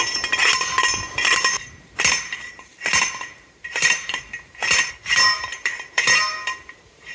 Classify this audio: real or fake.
fake